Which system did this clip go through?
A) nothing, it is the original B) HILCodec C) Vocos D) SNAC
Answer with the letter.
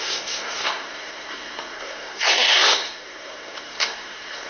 D